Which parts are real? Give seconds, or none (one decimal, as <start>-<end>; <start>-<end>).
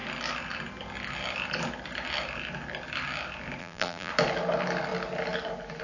0.0-3.6; 4.1-5.8